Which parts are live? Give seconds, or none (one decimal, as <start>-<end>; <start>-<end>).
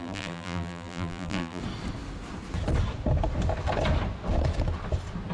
1.6-5.3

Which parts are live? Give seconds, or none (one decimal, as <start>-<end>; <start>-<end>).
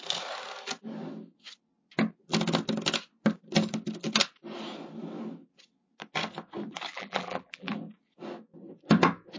0.0-6.9; 7.7-9.4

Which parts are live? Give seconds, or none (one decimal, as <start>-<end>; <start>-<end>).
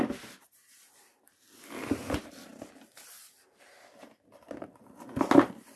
0.0-5.8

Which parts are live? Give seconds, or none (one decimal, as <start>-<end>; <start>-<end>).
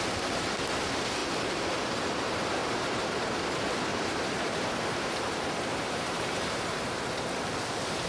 0.0-2.6; 3.4-3.9; 7.0-8.1